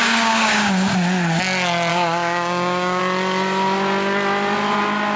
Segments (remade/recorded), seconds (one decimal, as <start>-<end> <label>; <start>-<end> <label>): 0.0-0.9 remade; 0.9-1.9 recorded; 1.9-3.0 remade; 3.0-5.2 recorded